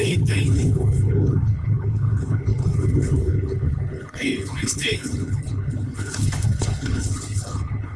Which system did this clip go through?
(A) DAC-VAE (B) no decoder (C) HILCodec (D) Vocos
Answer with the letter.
C